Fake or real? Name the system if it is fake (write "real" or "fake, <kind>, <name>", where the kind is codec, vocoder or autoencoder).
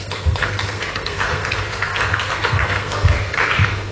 fake, codec, SNAC